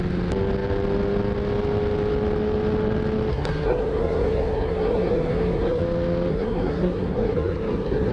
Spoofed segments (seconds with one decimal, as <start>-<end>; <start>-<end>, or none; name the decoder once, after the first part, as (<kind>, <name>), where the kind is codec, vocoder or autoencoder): 3.3-5.8 (codec, SNAC); 6.3-8.1